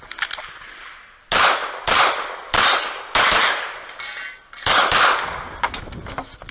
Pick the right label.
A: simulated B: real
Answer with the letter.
B